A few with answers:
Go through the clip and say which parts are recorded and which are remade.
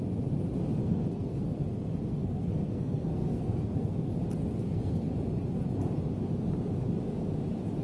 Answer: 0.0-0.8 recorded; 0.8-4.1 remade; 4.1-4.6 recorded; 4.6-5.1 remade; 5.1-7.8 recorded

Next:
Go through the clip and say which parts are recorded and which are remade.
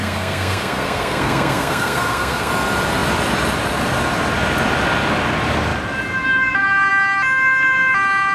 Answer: 0.0-2.5 remade; 2.5-8.3 recorded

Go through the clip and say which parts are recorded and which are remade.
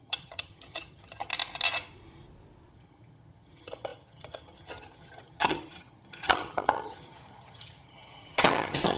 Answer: 0.0-1.3 remade; 1.3-2.7 recorded; 2.7-9.0 remade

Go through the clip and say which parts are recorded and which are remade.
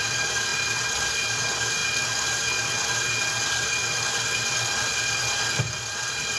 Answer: 0.0-6.4 recorded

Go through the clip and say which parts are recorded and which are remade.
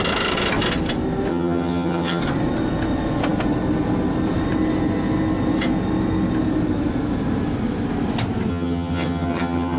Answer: 0.0-1.3 recorded; 1.3-2.2 remade; 2.2-8.5 recorded; 8.5-9.8 remade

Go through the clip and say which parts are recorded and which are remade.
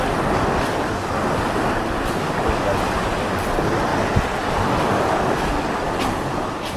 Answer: 0.0-6.8 recorded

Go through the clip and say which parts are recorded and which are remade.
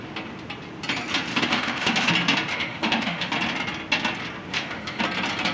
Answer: 0.0-1.3 recorded; 1.3-2.1 remade; 2.1-2.5 recorded; 2.5-3.3 remade; 3.3-4.5 recorded; 4.5-5.0 remade; 5.0-5.5 recorded